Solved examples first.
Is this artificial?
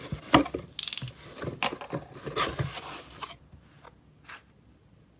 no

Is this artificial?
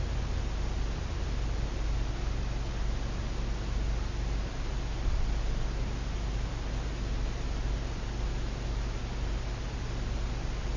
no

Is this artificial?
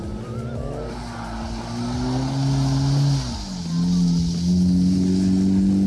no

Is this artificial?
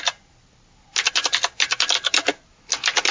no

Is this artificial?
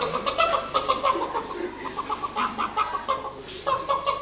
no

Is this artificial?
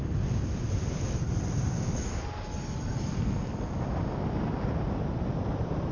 no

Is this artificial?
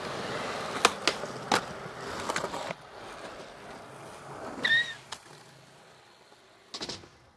no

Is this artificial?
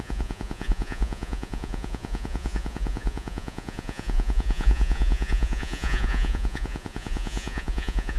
yes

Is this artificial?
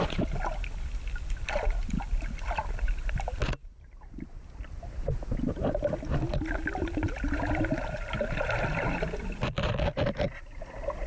yes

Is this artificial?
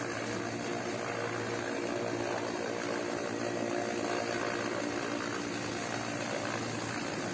no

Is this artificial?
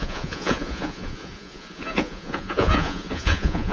yes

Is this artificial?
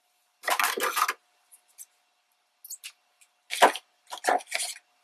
no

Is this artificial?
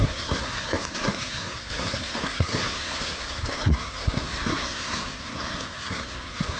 yes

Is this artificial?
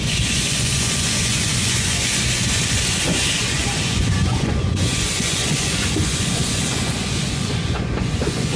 yes